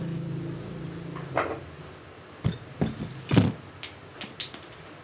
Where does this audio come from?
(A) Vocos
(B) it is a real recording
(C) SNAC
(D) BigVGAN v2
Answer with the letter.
B